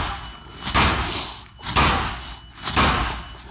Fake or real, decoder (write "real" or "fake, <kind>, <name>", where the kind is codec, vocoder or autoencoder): real